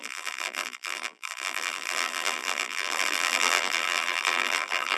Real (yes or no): no